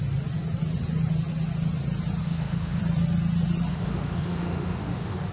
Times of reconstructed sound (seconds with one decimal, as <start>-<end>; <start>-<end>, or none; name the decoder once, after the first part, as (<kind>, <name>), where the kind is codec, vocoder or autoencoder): 2.2-2.8 (autoencoder, DAC-VAE); 3.7-5.3